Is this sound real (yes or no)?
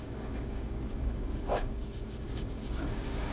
no